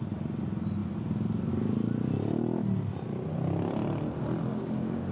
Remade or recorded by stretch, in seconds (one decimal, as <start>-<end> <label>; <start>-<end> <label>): 0.0-4.5 recorded; 4.5-5.1 remade